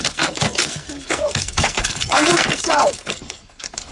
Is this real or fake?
fake